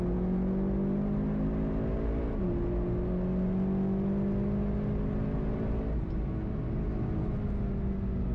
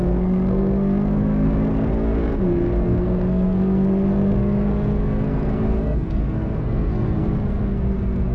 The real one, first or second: first